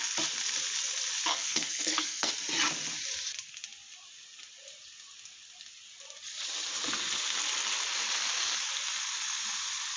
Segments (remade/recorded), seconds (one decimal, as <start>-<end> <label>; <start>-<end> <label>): 0.0-1.3 recorded; 1.3-2.3 remade; 2.3-10.0 recorded